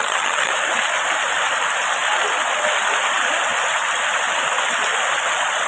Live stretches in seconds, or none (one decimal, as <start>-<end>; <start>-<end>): 0.5-5.7